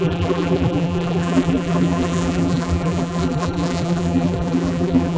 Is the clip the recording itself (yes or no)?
no